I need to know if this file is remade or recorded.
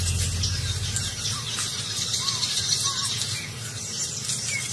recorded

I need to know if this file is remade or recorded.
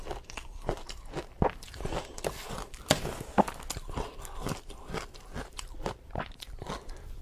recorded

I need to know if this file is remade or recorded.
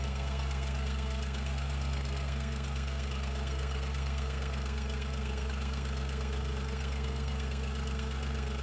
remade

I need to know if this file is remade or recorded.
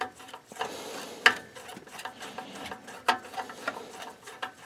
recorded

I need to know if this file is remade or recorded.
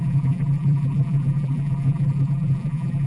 remade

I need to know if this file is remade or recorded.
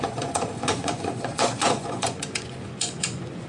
remade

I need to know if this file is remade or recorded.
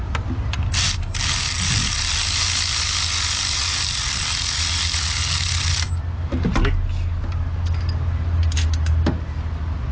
recorded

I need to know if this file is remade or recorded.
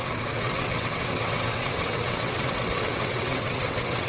remade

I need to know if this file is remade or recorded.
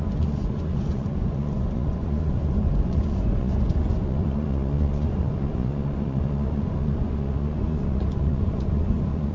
remade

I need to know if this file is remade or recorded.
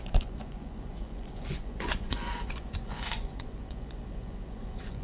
remade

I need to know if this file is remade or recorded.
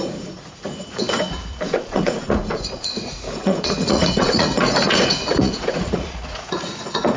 remade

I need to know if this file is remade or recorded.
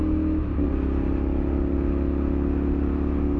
recorded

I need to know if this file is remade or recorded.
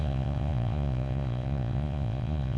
remade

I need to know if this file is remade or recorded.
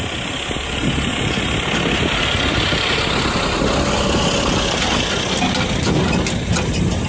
recorded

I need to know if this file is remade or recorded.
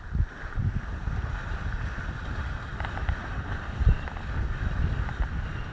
recorded